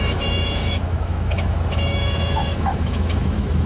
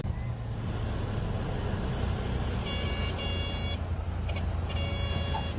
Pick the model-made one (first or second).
first